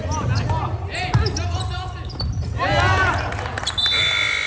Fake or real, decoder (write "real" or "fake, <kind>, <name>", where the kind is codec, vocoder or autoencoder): real